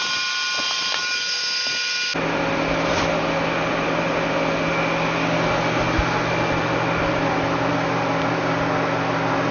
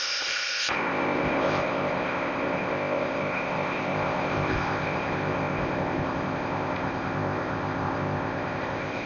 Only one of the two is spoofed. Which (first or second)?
second